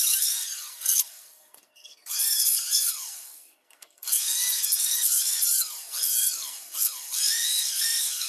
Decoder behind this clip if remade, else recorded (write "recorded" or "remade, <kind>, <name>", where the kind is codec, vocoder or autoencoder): remade, codec, SNAC